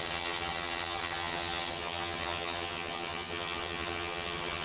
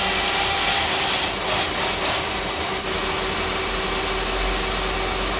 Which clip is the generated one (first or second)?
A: first